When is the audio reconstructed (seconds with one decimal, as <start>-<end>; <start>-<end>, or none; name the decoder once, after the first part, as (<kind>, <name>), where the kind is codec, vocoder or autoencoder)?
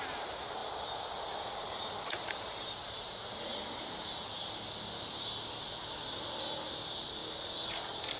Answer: 0.0-0.6 (vocoder, BigVGAN v2); 2.0-3.5; 6.7-7.2; 7.7-8.2